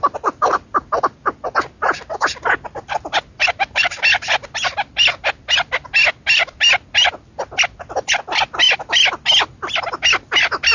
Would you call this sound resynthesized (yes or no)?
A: no